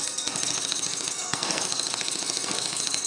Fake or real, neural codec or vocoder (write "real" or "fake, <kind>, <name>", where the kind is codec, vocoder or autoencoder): fake, codec, SNAC